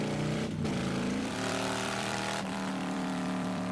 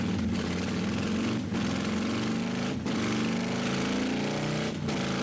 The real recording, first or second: second